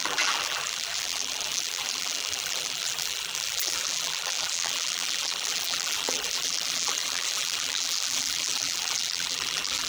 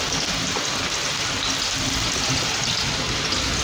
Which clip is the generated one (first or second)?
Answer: first